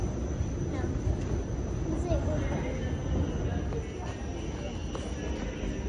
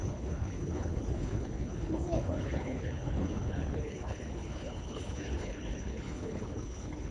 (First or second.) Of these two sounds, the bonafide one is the first